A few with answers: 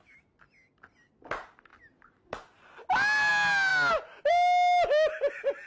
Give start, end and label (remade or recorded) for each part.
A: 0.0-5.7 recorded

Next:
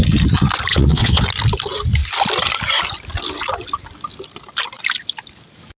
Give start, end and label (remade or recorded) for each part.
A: 0.0-0.7 recorded; 0.7-1.2 remade; 1.2-5.8 recorded

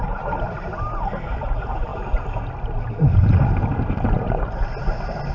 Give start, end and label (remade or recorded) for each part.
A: 0.0-5.3 recorded

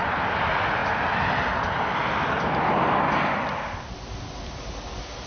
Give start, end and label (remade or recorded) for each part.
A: 0.0-5.3 recorded

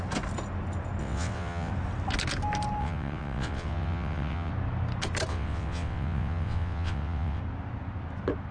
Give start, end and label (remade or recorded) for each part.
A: 0.0-1.0 recorded; 1.0-1.7 remade; 1.7-2.8 recorded; 2.8-4.5 remade; 4.5-5.3 recorded; 5.3-7.4 remade; 7.4-8.5 recorded